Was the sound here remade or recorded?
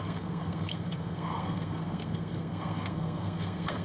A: remade